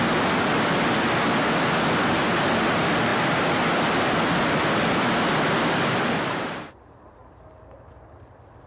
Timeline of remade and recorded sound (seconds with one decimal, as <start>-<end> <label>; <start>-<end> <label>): 0.0-8.7 recorded